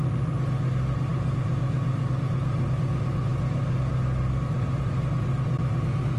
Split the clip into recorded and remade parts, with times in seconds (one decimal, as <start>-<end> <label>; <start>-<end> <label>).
0.0-6.2 recorded